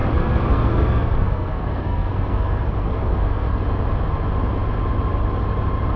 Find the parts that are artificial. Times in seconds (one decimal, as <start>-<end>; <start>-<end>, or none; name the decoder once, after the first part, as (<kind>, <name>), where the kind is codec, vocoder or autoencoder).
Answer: 0.0-3.6 (codec, SNAC)